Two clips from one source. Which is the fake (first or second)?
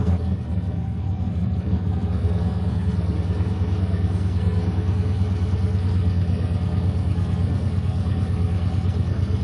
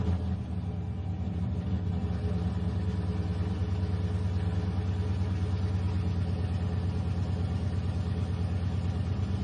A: first